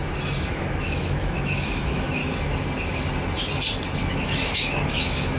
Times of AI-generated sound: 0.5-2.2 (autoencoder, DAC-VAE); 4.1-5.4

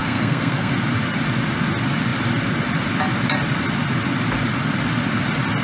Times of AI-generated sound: 0.0-0.7 (codec, SNAC)

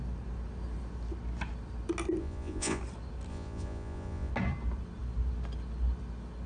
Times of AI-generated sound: 2.2-2.8 (vocoder, Vocos); 3.3-4.3

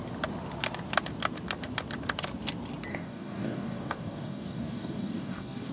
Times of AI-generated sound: 2.9-5.7 (codec, DAC)

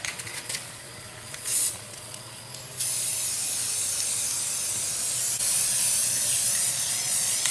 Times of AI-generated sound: 0.0-2.5 (vocoder, Vocos); 6.7-7.5

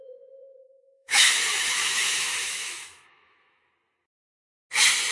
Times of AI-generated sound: 0.6-3.7 (autoencoder, DAC-VAE)

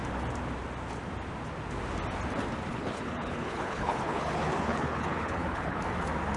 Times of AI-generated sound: 2.7-5.8 (codec, HILCodec)

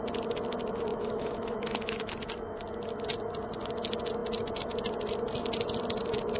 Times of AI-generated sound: 0.9-2.1 (autoencoder, DAC-VAE)